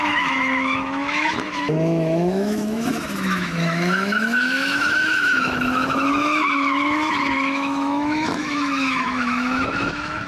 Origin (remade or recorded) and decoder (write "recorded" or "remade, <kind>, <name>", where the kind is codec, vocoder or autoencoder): remade, autoencoder, DAC-VAE